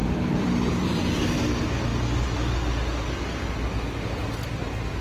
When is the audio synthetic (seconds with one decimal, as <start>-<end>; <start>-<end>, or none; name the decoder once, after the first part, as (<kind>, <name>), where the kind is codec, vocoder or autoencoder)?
0.0-1.4 (vocoder, BigVGAN v2)